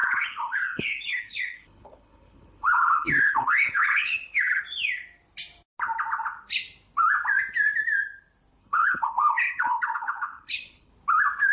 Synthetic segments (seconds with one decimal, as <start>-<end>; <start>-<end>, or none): 0.0-4.6; 8.6-10.9